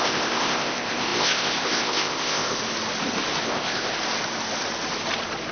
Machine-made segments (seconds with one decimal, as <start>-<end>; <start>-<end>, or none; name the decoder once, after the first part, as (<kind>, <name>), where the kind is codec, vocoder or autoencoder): 0.0-2.6 (codec, ZipCodec); 3.4-3.9